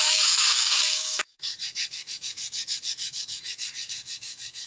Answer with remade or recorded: remade